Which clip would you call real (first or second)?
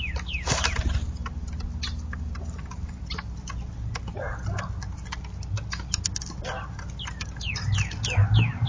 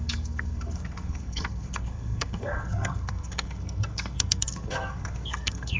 first